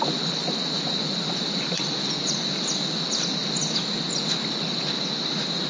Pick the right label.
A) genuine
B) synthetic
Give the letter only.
A